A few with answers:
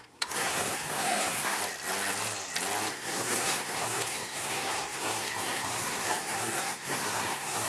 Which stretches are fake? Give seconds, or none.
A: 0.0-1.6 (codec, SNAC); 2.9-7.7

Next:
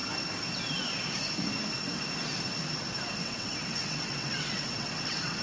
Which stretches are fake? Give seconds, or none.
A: 3.2-5.4 (vocoder, WaveNeXt)